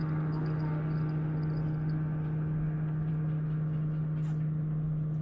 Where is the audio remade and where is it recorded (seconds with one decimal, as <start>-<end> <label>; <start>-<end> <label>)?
0.0-5.2 recorded